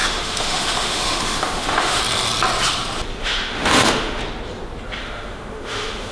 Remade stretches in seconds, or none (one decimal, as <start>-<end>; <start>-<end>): 0.0-2.0; 3.2-4.2; 5.0-6.1